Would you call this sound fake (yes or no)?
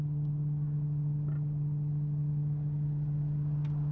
no